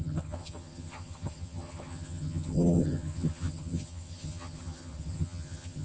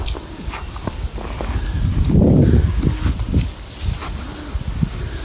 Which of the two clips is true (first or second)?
second